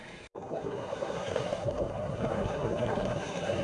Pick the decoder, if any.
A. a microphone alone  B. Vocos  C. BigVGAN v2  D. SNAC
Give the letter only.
D